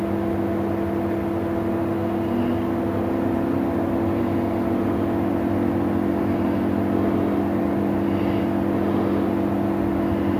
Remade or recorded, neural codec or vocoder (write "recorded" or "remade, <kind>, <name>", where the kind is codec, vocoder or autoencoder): recorded